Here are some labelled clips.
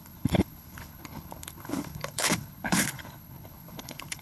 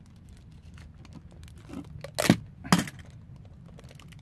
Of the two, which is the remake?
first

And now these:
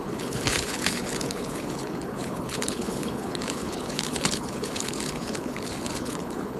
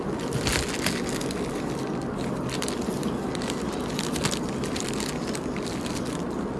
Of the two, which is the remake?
first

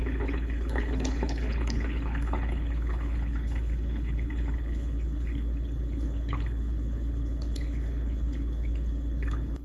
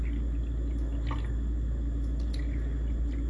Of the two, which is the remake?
first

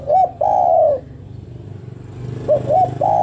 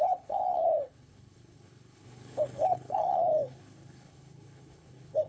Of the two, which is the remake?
second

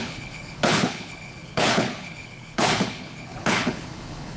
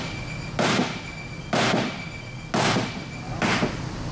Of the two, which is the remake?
first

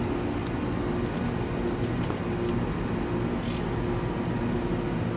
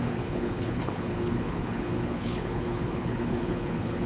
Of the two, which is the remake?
second